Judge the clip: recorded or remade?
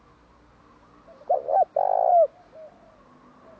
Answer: recorded